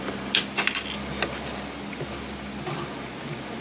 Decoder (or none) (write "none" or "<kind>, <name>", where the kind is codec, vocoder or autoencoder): none